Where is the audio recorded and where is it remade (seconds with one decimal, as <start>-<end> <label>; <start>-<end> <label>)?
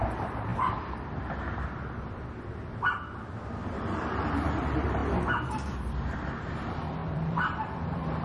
0.0-0.5 remade; 0.5-3.6 recorded; 3.6-5.0 remade; 5.0-6.3 recorded; 6.3-8.2 remade